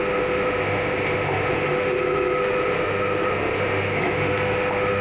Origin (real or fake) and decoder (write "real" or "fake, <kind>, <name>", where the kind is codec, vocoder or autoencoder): fake, autoencoder, DAC-VAE